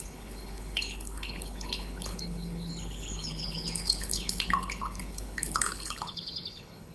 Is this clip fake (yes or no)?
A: yes